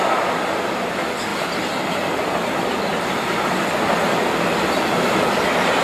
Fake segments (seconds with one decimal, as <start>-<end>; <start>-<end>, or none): 2.9-3.7